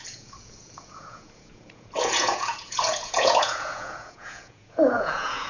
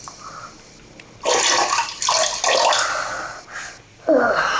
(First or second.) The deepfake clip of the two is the first